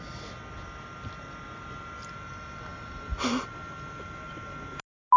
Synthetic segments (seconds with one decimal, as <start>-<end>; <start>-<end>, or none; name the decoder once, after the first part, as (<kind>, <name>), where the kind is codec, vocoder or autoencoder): none